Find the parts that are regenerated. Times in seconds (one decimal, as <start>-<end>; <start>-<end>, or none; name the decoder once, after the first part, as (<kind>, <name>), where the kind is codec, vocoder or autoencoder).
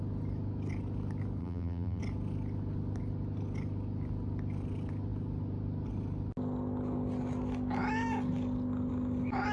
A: 1.4-2.0 (vocoder, BigVGAN v2)